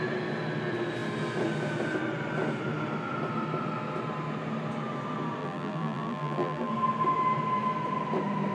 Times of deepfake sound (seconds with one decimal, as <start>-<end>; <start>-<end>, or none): 5.4-6.7